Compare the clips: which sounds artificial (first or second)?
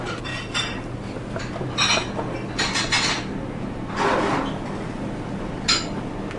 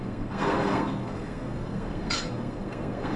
second